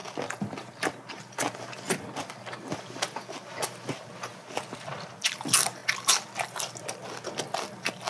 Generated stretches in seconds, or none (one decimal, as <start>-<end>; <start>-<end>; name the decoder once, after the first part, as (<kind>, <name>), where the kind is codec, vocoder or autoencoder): 4.3-4.9 (vocoder, BigVGAN v2)